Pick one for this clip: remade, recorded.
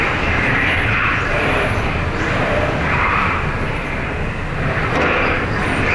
recorded